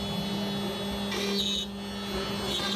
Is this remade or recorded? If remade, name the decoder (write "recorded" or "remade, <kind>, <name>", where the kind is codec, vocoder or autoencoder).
recorded